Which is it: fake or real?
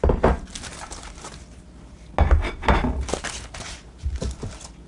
real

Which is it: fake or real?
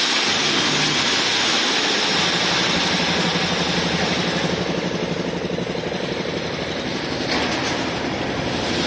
real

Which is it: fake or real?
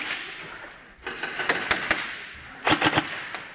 real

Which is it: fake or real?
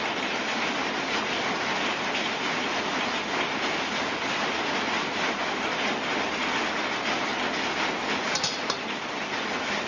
real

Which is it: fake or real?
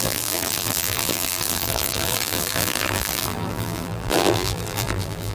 fake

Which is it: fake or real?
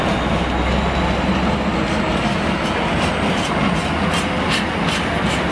real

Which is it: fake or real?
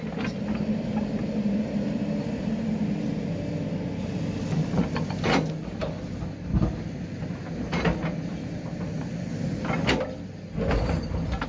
real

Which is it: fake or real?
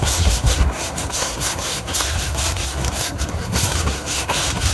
fake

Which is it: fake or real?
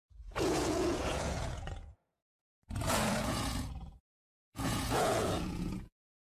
fake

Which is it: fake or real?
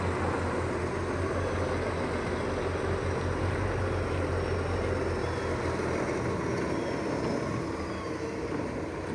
real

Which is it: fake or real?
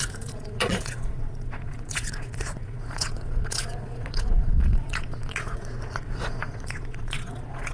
fake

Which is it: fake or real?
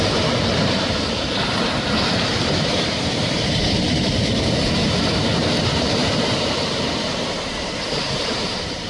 fake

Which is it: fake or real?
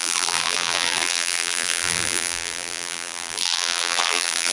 fake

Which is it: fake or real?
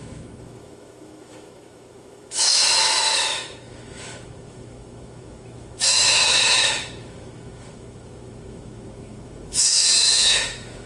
fake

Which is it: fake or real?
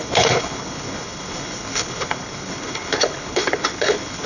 fake